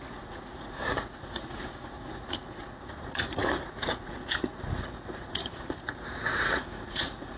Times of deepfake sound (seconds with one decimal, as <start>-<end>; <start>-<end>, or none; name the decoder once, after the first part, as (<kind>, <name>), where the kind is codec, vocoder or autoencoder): 0.0-7.4 (vocoder, Vocos)